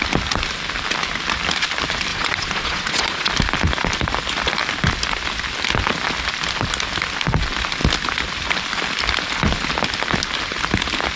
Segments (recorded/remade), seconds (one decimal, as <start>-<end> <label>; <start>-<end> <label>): 0.0-2.1 recorded; 2.1-3.3 remade; 3.3-11.2 recorded